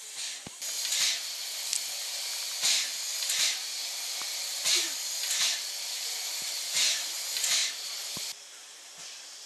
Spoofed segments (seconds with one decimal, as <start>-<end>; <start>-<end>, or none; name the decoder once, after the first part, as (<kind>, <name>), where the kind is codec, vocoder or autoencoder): none